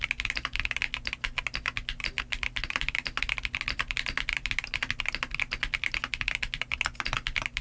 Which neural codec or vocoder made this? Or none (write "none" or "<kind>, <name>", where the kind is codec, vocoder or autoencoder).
none